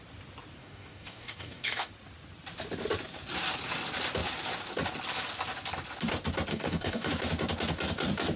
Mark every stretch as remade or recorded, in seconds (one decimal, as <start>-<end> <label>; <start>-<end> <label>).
0.0-0.6 recorded; 0.6-1.9 remade; 1.9-6.5 recorded; 6.5-7.1 remade; 7.1-8.4 recorded